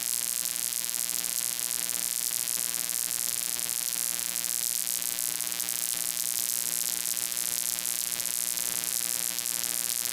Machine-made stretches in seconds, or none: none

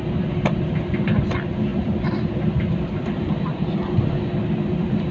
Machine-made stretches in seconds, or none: 1.7-5.1 (vocoder, BigVGAN v2)

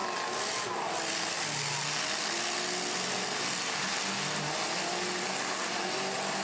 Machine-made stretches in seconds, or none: none

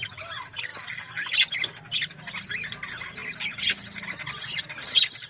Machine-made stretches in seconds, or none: none

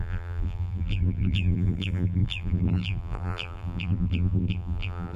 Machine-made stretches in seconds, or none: 0.0-5.2 (vocoder, BigVGAN v2)